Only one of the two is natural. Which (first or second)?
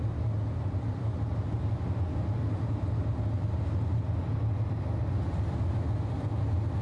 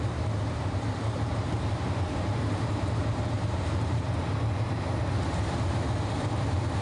first